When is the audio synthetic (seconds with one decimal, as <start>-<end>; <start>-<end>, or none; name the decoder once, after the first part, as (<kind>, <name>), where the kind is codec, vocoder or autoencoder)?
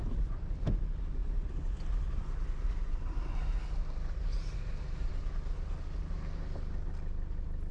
none